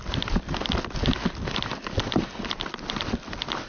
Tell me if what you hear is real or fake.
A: real